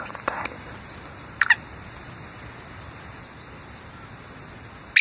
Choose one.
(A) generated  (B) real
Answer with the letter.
B